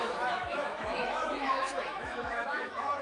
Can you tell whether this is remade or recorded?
remade